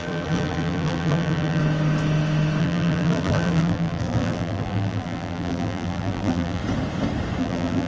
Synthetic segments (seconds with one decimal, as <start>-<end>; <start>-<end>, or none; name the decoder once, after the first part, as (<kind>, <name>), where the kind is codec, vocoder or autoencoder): 0.0-1.6 (vocoder, BigVGAN v2); 2.6-6.6; 7.4-7.9